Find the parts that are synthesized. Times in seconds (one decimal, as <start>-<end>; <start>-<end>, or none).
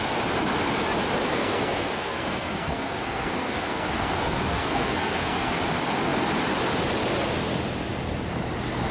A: 1.3-5.6